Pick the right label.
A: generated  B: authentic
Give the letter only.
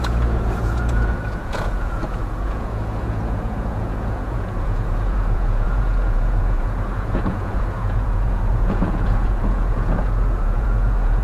A